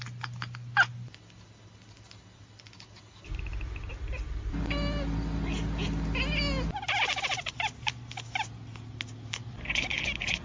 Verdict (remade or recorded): recorded